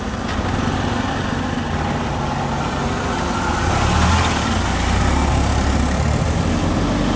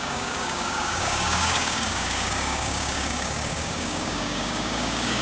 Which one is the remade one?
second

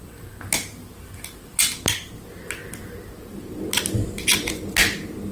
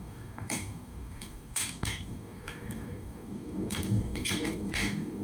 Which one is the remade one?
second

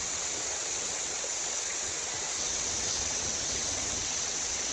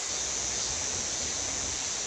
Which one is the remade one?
first